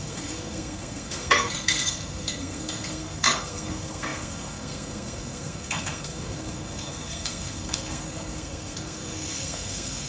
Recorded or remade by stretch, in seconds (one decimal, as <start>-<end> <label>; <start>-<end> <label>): 0.0-10.1 remade